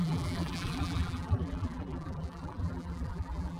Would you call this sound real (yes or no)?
no